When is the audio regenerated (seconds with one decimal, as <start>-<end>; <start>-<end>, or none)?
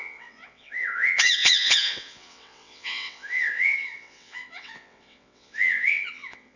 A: 0.0-6.6